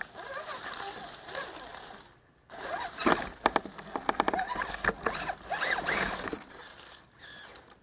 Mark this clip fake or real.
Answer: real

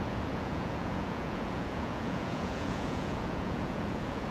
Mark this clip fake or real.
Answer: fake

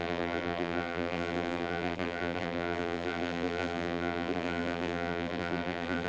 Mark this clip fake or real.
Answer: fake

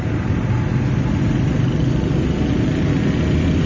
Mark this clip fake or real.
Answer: real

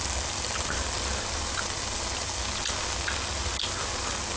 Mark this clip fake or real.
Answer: real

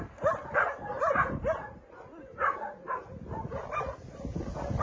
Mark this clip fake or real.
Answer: real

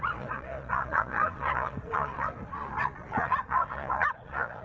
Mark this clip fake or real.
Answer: fake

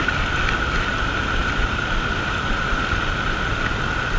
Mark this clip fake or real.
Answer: real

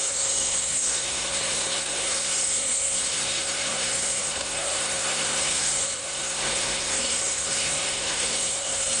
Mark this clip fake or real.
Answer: fake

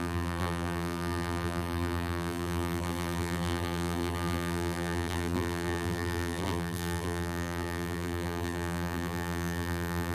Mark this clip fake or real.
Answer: fake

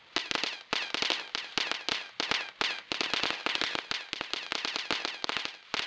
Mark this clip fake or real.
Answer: real